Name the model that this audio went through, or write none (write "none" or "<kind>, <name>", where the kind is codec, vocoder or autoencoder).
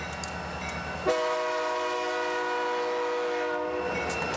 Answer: none